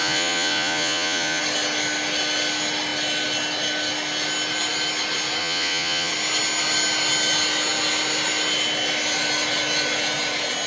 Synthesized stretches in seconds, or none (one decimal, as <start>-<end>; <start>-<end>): 0.0-1.4; 5.4-6.1